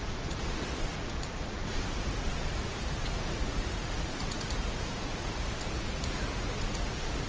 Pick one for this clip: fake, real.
fake